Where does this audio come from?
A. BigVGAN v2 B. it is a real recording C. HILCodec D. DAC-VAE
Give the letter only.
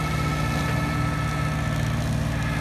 B